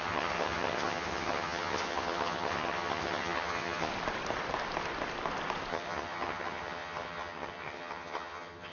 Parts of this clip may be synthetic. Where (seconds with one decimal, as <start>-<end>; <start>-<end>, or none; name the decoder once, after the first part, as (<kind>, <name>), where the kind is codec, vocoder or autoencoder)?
0.0-3.9 (vocoder, HiFi-GAN); 5.7-8.7